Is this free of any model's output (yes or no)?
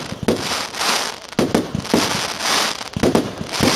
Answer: yes